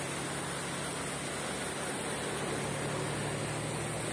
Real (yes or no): yes